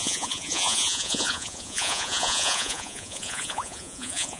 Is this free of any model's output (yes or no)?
no